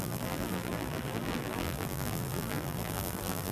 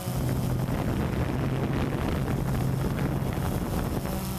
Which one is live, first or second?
second